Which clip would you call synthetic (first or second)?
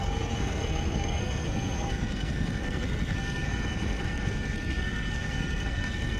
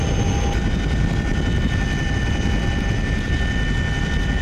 first